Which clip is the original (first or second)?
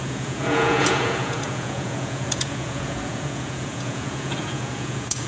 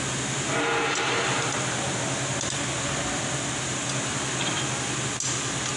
second